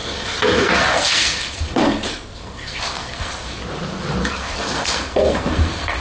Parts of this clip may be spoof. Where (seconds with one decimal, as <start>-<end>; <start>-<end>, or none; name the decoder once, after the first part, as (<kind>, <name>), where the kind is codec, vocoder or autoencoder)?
0.0-3.6 (codec, SNAC); 4.2-6.0